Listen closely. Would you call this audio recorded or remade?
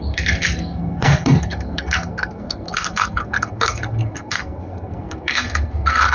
remade